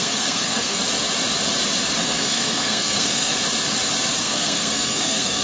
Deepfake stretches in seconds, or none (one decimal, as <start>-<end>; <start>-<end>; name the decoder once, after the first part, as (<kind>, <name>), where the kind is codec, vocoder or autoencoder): 0.0-0.8 (codec, SNAC); 2.0-3.3; 4.2-5.4